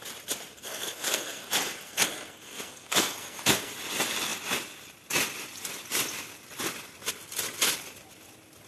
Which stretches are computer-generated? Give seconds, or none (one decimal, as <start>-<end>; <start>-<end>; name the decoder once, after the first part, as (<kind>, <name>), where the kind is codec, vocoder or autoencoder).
0.5-3.7 (codec, SNAC)